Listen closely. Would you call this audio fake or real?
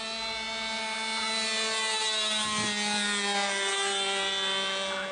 real